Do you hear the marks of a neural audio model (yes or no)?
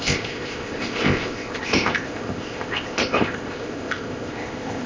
yes